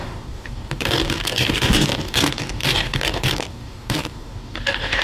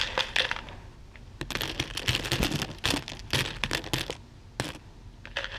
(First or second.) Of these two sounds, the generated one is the first